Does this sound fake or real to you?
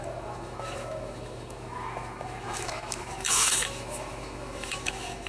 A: fake